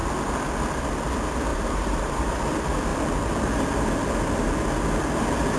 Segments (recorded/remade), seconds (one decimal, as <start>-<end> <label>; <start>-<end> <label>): 0.0-1.5 recorded; 1.5-2.4 remade; 2.4-5.6 recorded

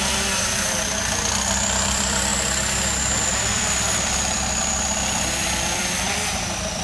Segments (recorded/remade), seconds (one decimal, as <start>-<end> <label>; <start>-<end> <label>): 0.0-2.3 remade; 2.3-3.2 recorded; 3.2-6.8 remade

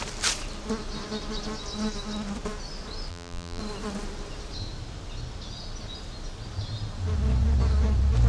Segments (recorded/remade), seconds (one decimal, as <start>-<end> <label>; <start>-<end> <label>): 0.0-3.1 recorded; 3.1-3.6 remade; 3.6-8.3 recorded

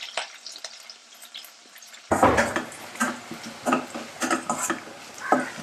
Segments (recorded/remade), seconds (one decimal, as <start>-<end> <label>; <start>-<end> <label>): 0.0-1.0 recorded; 1.0-3.4 remade; 3.4-5.6 recorded

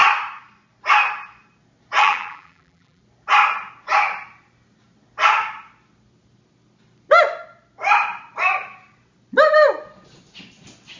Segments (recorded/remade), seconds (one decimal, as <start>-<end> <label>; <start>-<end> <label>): 0.0-2.0 recorded; 2.0-3.0 remade; 3.0-11.0 recorded